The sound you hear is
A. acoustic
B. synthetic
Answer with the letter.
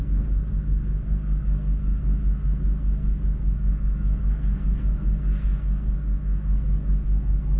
B